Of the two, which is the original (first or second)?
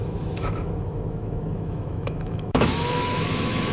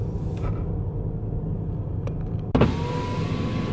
second